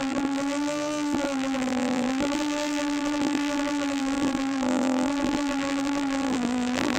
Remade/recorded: remade